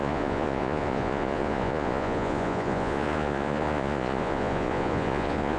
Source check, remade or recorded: remade